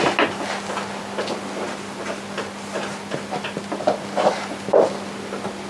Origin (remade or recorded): recorded